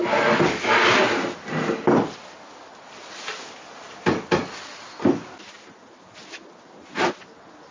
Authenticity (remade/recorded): recorded